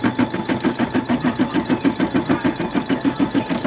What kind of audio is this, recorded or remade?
recorded